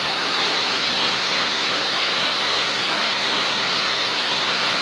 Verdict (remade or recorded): remade